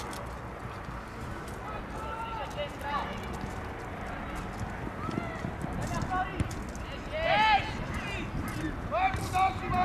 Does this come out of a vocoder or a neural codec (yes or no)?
no